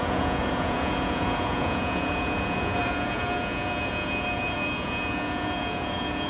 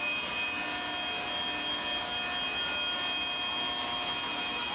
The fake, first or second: first